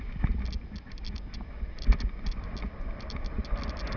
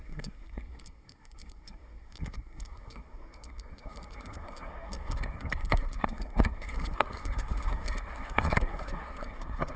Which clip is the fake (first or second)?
second